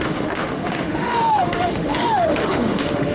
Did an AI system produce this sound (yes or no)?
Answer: yes